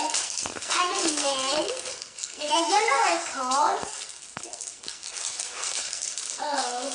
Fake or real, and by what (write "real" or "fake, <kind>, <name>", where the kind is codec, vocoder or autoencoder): fake, codec, SNAC